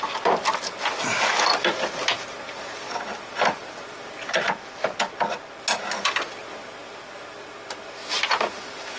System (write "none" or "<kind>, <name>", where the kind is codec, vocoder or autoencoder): none